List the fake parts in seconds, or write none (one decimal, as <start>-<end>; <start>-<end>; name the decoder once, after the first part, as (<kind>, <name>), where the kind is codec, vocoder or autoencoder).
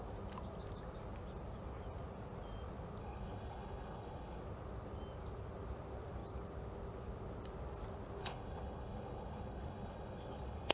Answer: 3.0-4.4 (codec, HILCodec); 8.2-10.7